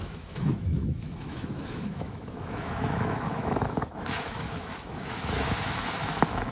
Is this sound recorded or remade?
remade